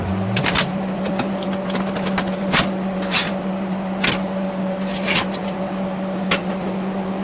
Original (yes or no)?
yes